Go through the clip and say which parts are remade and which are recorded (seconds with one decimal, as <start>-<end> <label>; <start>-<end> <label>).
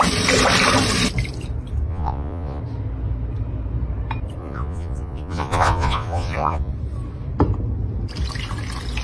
0.0-1.9 recorded; 1.9-2.6 remade; 2.6-4.4 recorded; 4.4-6.7 remade; 6.7-9.0 recorded